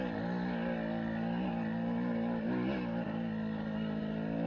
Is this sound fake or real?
real